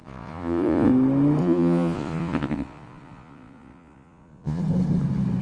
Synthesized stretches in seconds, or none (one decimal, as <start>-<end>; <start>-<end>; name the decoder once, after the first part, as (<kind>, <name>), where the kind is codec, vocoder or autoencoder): 0.0-0.9 (vocoder, Vocos); 1.4-4.6